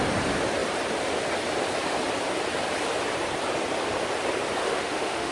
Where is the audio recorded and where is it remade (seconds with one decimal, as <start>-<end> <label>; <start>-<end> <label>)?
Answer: 0.0-4.6 recorded; 4.6-5.3 remade